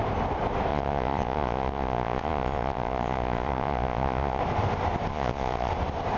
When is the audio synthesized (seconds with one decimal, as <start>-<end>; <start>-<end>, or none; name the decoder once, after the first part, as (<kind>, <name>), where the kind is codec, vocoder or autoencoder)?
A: 0.7-4.4 (vocoder, Vocos); 5.1-5.7